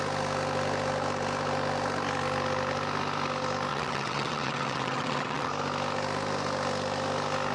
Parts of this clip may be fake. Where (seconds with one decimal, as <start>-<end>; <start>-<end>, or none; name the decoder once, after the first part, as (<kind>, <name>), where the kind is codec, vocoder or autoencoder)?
3.7-5.5 (vocoder, WaveNeXt)